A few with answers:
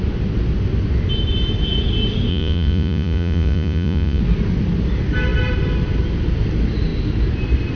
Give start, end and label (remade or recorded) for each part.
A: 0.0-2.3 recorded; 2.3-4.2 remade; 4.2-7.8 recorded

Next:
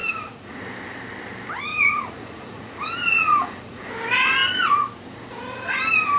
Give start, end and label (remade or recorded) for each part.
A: 0.0-0.6 remade; 0.6-1.7 recorded; 1.7-3.9 remade; 3.9-6.2 recorded

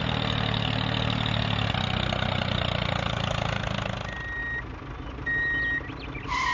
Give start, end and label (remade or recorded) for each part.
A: 0.0-6.5 recorded

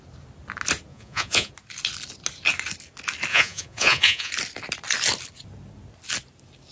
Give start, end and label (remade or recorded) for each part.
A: 0.0-0.9 recorded; 0.9-1.5 remade; 1.5-3.3 recorded; 3.3-4.3 remade; 4.3-6.7 recorded

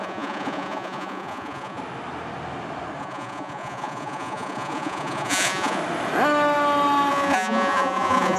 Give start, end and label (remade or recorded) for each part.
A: 0.0-1.8 remade; 1.8-3.0 recorded; 3.0-5.8 remade; 5.8-7.1 recorded; 7.1-8.4 remade

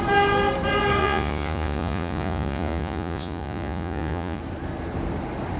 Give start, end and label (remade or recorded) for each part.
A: 0.0-1.0 recorded; 1.0-4.4 remade; 4.4-5.6 recorded

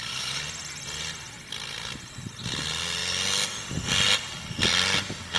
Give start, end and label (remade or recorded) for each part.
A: 0.0-5.4 recorded